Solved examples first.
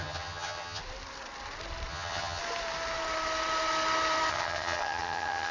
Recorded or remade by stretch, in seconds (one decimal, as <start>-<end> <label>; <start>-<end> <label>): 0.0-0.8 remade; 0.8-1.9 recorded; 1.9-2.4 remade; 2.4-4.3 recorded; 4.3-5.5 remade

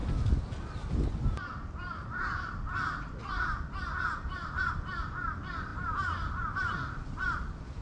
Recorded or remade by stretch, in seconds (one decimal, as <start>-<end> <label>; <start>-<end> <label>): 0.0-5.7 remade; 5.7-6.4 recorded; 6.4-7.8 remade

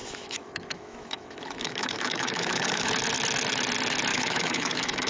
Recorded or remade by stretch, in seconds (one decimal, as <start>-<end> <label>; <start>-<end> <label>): 0.0-2.9 remade; 2.9-4.1 recorded; 4.1-5.1 remade

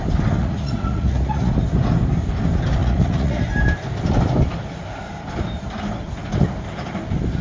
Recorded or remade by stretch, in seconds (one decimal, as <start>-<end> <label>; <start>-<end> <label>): 0.0-0.4 recorded; 0.4-1.5 remade; 1.5-2.8 recorded; 2.8-3.4 remade; 3.4-7.4 recorded

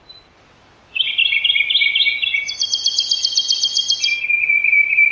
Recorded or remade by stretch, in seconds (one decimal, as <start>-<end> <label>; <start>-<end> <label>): 0.0-5.1 recorded

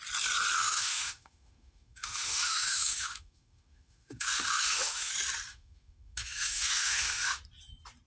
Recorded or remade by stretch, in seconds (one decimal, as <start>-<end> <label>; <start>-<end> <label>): 0.0-0.6 recorded; 0.6-5.1 remade; 5.1-5.5 recorded; 5.5-7.4 remade; 7.4-8.1 recorded

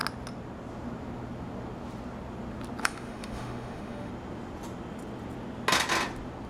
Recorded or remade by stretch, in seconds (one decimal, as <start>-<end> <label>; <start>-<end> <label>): 0.0-2.8 recorded; 2.8-4.1 remade; 4.1-6.5 recorded

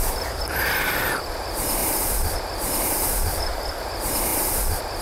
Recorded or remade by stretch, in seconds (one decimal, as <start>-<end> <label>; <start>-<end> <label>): 0.0-5.0 remade